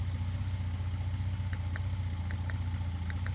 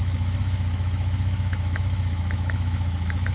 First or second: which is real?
first